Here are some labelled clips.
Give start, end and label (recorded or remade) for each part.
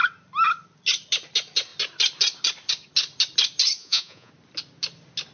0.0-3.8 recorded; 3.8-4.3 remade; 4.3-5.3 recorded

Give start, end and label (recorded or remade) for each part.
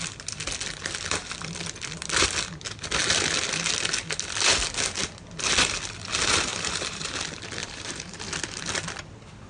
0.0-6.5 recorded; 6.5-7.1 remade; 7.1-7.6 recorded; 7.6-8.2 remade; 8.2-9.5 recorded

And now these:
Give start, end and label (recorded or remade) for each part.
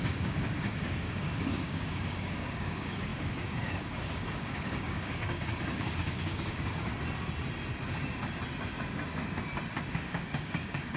0.0-6.9 remade; 6.9-9.9 recorded; 9.9-11.0 remade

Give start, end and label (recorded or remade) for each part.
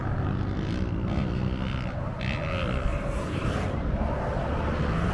0.0-2.9 recorded; 2.9-4.0 remade; 4.0-5.1 recorded